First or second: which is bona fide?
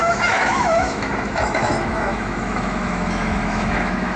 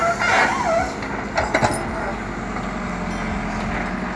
second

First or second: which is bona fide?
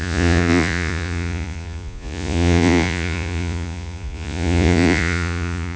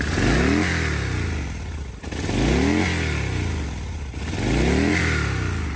second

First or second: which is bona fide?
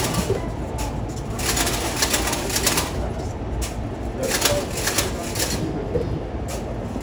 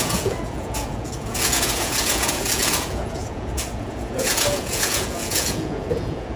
first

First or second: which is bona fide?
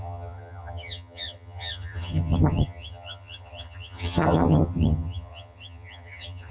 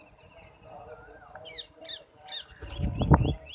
second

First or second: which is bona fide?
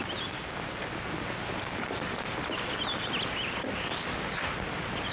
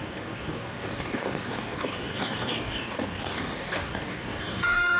first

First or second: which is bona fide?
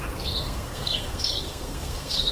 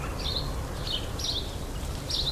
second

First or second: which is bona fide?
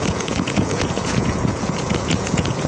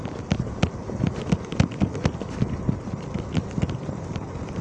second